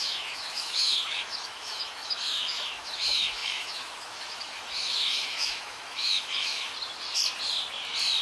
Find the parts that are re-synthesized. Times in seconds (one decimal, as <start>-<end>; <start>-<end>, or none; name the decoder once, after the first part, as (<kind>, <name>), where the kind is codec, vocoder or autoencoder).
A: 0.0-6.7 (autoencoder, DAC-VAE)